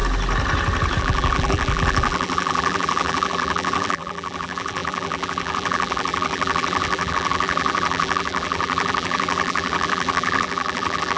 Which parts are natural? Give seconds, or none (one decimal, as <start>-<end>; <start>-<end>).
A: 0.0-1.0